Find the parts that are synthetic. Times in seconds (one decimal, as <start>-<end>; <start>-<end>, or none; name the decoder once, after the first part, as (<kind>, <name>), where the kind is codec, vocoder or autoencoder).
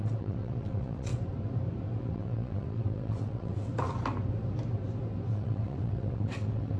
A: 0.0-1.1 (vocoder, WaveNeXt); 2.0-3.7; 5.3-6.8